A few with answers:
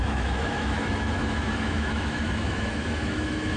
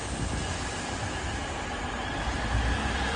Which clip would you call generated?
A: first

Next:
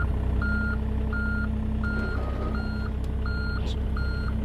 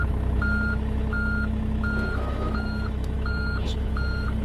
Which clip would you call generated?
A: second